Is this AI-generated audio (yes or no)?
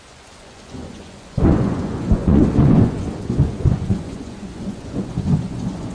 yes